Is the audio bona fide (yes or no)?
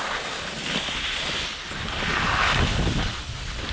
yes